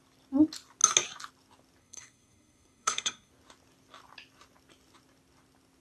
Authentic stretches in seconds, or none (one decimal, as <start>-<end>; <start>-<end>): 0.0-1.8; 3.3-5.8